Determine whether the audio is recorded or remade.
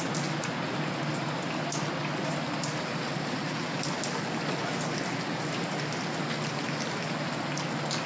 recorded